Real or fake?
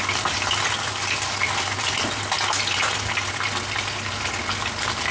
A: real